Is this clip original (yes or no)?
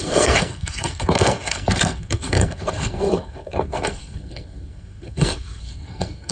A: no